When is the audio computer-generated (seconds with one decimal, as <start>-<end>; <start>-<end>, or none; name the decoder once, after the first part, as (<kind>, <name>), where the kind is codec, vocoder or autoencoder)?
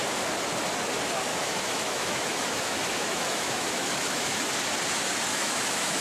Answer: 1.3-4.5 (autoencoder, DAC-VAE); 5.3-6.0